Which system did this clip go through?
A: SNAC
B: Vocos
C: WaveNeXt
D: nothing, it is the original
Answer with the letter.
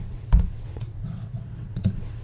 C